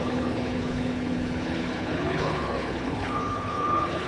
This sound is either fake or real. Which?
fake